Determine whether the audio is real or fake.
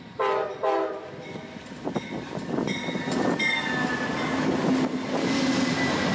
real